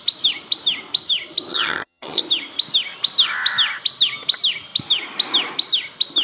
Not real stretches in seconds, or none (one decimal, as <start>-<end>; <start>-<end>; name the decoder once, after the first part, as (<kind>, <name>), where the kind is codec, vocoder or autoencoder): 1.5-2.2 (vocoder, HiFi-GAN)